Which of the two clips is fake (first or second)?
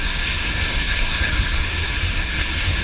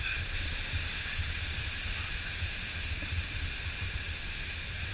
first